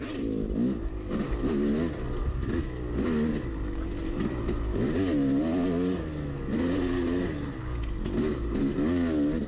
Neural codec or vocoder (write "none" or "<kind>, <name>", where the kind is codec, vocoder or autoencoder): none